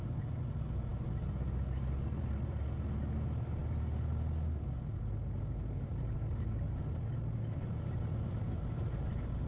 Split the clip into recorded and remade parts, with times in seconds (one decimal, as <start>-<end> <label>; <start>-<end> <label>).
0.0-9.5 recorded

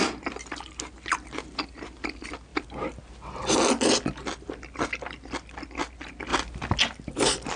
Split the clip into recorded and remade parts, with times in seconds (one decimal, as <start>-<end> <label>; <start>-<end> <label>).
0.0-7.6 recorded

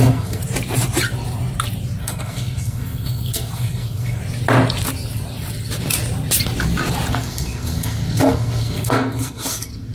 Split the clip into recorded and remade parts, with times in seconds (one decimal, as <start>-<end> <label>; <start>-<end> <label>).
0.0-0.4 remade; 0.4-2.0 recorded; 2.0-4.2 remade; 4.2-7.1 recorded; 7.1-9.9 remade

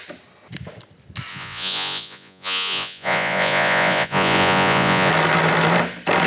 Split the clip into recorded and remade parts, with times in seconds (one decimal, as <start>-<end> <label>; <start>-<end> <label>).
0.0-1.3 recorded; 1.3-5.1 remade; 5.1-6.3 recorded